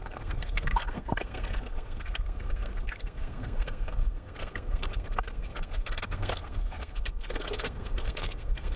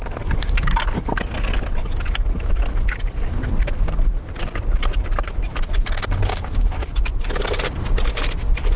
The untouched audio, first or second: second